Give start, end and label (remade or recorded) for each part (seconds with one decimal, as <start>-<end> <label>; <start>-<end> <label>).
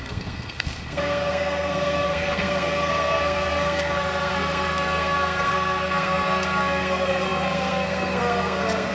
0.0-8.9 remade